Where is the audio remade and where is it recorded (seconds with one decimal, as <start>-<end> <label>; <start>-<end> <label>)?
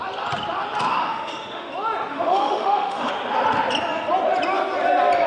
0.0-0.9 recorded; 0.9-1.7 remade; 1.7-2.1 recorded; 2.1-3.1 remade; 3.1-5.3 recorded